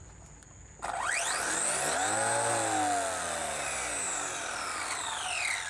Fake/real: real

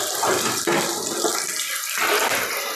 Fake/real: real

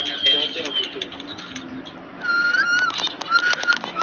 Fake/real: real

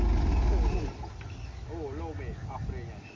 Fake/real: real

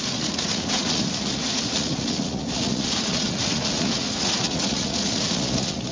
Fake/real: fake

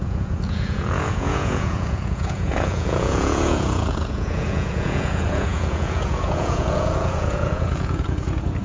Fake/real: fake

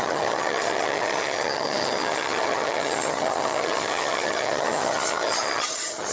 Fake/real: fake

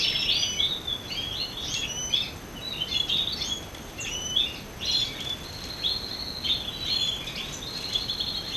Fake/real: real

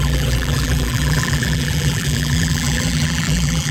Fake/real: fake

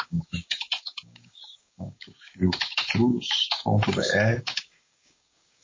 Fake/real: fake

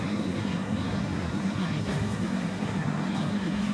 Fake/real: fake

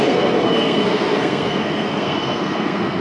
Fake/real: fake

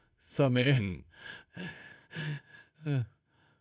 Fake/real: fake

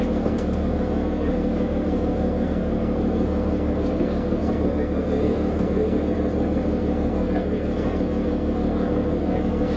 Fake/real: fake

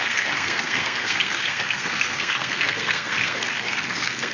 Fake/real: fake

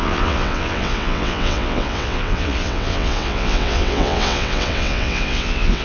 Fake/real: fake